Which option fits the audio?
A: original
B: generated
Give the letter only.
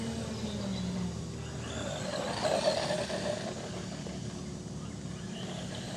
A